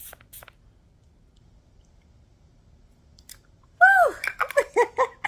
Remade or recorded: recorded